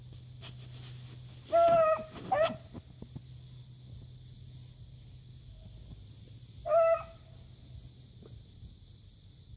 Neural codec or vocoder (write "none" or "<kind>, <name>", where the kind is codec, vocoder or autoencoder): none